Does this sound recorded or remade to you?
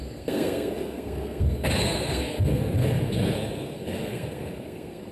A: remade